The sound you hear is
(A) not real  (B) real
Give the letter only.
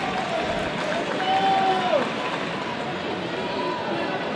B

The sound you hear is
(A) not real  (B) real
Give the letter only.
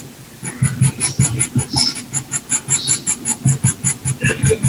B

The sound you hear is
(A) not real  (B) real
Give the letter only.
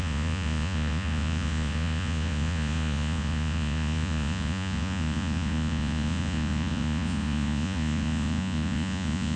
A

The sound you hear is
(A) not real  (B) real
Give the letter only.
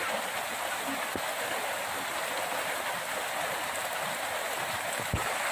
B